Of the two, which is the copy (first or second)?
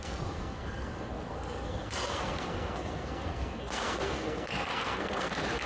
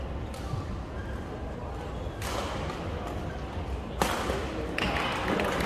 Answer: first